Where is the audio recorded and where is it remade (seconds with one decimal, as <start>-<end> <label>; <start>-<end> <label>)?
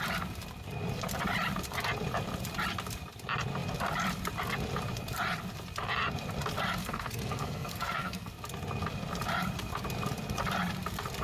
0.0-6.8 recorded; 6.8-8.3 remade; 8.3-11.2 recorded